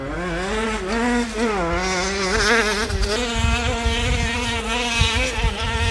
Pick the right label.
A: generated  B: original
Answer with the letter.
B